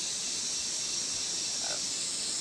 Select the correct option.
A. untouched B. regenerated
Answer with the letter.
A